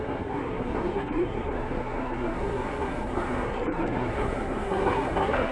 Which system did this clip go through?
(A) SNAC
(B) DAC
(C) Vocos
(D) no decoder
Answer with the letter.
A